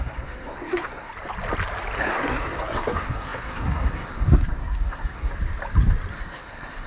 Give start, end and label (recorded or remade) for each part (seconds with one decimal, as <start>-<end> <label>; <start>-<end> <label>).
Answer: 0.0-1.1 remade; 1.1-2.0 recorded; 2.0-5.3 remade; 5.3-6.1 recorded; 6.1-6.9 remade